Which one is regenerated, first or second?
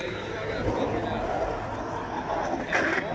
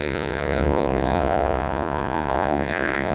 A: second